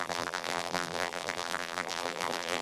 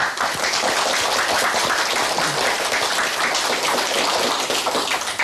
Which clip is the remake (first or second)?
first